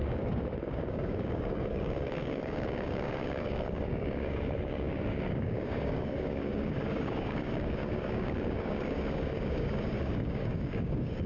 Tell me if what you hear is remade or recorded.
remade